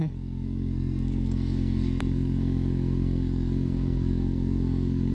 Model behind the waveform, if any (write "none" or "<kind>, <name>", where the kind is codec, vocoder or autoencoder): codec, SNAC